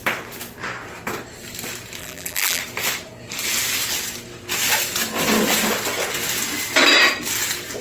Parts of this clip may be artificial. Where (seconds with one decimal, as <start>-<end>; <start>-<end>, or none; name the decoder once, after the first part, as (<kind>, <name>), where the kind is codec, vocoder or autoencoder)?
2.0-2.6 (vocoder, BigVGAN v2)